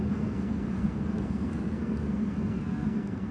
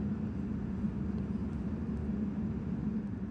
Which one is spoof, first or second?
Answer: first